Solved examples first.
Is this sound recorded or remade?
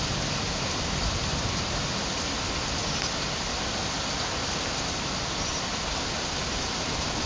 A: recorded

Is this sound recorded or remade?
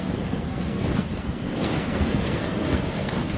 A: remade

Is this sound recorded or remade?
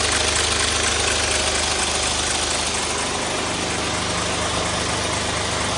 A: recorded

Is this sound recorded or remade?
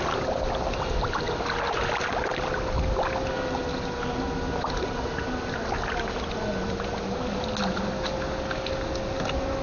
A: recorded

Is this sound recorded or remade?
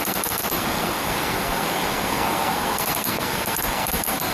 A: remade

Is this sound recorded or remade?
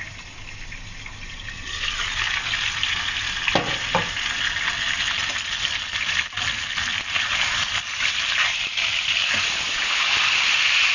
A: recorded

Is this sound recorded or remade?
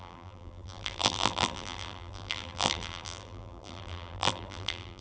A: remade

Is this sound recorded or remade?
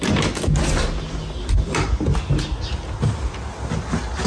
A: recorded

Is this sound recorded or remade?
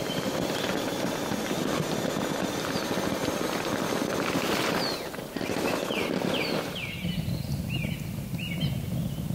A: remade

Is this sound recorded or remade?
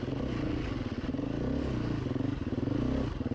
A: recorded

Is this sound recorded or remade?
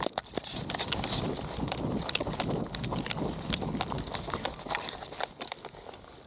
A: recorded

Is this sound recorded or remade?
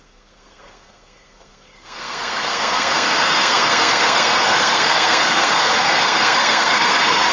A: remade